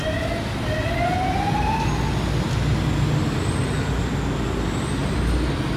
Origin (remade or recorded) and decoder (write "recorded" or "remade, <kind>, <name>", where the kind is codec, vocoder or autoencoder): recorded